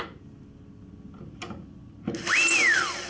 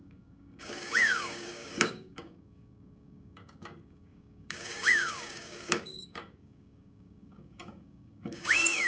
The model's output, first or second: second